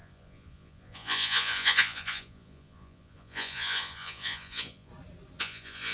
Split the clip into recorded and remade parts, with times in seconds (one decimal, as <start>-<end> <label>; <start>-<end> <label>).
0.0-4.9 remade; 4.9-5.4 recorded; 5.4-5.9 remade

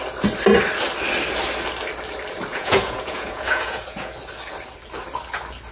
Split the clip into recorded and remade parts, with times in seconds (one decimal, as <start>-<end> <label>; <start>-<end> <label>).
0.0-2.5 recorded; 2.5-4.1 remade; 4.1-5.7 recorded

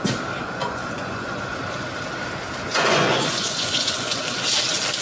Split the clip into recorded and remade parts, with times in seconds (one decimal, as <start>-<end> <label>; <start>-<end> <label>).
0.0-0.4 recorded; 0.4-1.4 remade; 1.4-2.7 recorded; 2.7-4.2 remade; 4.2-5.0 recorded